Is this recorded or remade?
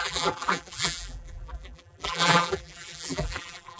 remade